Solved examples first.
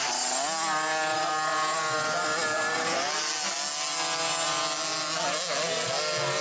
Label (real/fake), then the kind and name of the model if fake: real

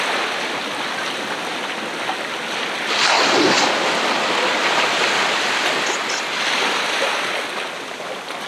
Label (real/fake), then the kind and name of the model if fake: real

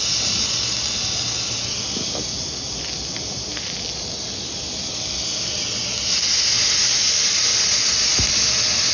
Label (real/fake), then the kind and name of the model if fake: real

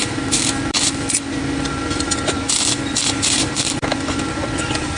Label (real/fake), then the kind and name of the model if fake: fake, vocoder, BigVGAN v2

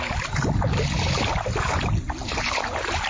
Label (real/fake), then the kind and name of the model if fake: real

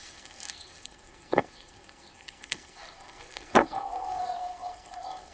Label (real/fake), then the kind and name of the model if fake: fake, codec, SNAC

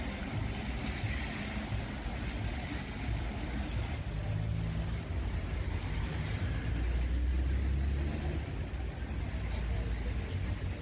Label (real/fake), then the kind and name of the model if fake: real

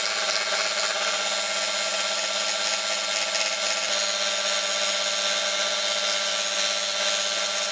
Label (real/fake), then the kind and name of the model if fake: real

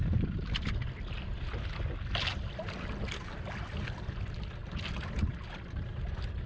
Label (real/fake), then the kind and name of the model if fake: real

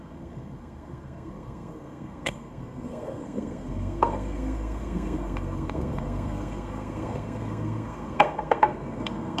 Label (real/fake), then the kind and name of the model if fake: fake, codec, SNAC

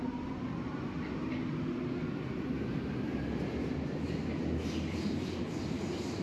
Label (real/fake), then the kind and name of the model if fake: real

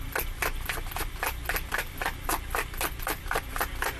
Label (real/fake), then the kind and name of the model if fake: real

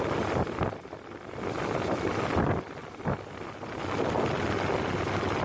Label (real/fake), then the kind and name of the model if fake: real